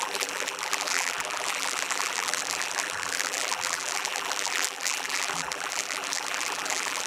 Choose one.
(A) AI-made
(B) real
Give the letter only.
A